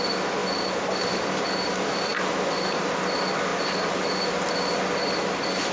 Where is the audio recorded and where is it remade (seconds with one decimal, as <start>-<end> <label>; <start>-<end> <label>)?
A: 0.0-5.7 recorded